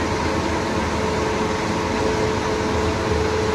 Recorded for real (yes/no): yes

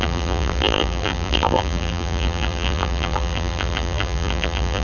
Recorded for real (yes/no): no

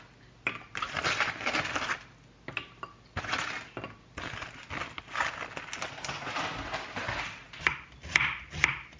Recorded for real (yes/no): yes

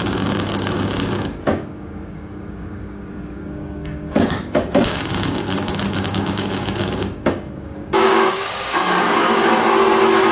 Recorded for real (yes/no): no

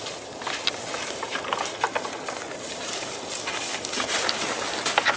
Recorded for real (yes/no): yes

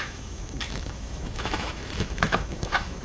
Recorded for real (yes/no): no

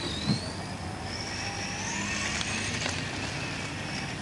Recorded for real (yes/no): yes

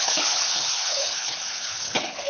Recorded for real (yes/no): no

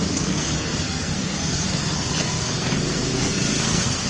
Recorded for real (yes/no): no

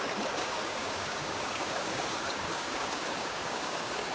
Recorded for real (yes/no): no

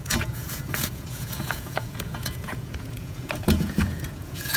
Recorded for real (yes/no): no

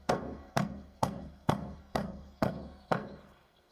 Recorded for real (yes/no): no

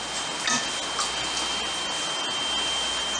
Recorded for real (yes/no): yes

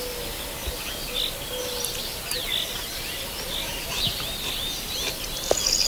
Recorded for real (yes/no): yes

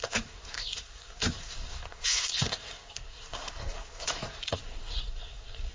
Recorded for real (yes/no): no